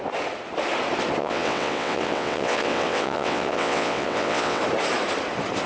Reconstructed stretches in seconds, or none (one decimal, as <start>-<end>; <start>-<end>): 1.2-4.6